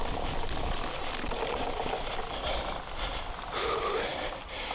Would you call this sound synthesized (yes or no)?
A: no